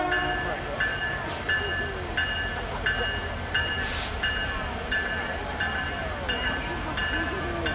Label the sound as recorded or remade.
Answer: recorded